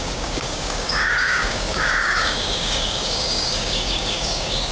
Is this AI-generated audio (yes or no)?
yes